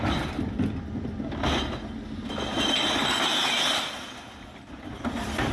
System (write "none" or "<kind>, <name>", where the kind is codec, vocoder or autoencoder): none